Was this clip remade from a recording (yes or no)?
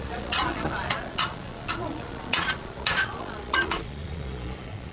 yes